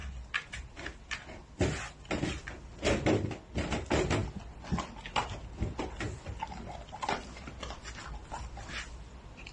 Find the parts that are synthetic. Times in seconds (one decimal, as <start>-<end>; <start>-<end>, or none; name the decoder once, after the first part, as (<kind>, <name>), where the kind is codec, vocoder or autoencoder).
none